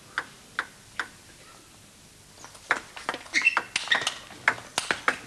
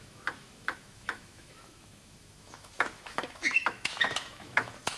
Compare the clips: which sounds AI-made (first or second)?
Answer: second